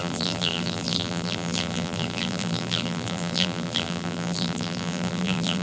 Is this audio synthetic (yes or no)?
yes